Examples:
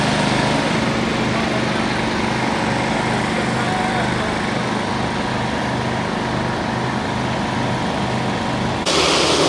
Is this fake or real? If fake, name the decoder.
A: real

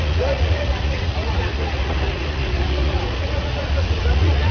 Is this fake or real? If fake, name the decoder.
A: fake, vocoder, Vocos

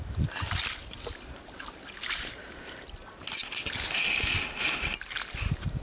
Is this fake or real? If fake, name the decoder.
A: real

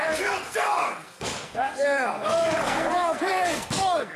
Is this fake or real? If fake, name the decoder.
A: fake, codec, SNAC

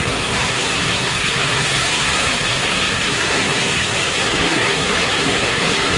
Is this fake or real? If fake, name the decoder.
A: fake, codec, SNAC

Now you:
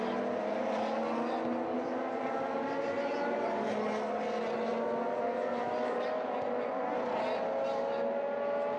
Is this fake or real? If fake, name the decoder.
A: real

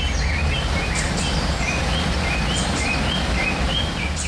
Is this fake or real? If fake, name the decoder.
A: real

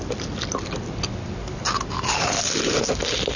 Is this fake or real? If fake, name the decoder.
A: real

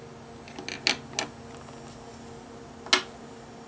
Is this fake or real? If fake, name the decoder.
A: real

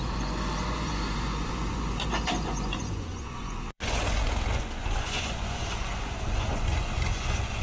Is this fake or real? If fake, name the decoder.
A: fake, vocoder, Vocos